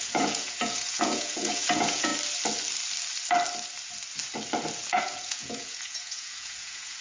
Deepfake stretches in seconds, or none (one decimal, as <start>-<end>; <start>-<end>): 0.0-2.1; 5.0-7.0